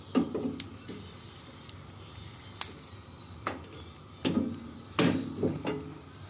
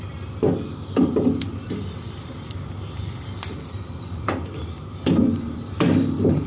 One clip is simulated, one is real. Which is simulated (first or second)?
second